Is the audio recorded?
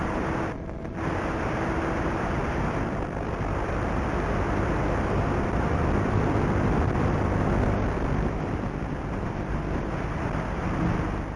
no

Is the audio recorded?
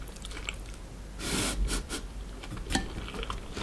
yes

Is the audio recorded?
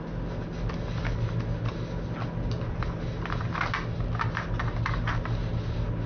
yes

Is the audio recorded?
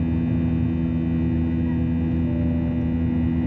yes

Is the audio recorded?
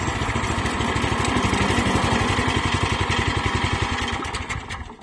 yes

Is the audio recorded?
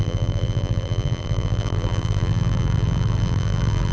no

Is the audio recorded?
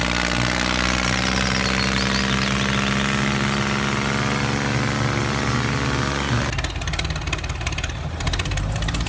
yes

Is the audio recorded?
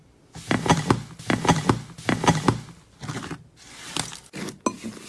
yes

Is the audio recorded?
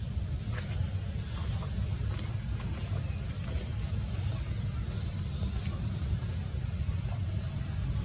yes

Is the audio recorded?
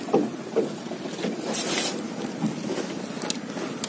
yes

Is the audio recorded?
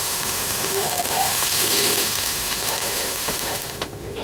no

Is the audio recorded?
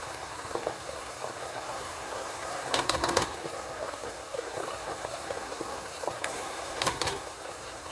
no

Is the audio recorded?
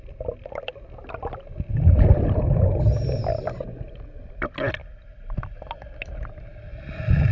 yes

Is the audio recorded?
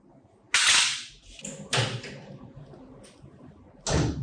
yes